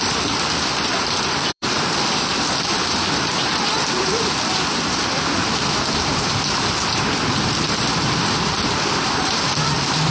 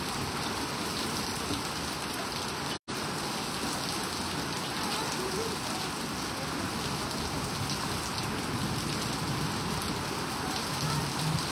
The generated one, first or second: first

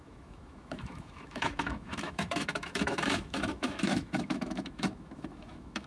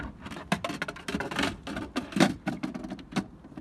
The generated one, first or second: first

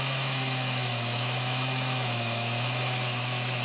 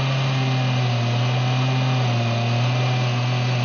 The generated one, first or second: first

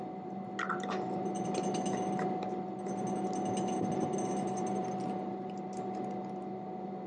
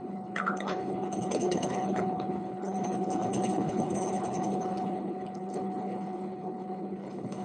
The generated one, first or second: second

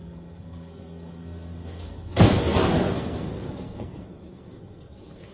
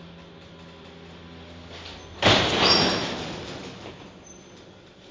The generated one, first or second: first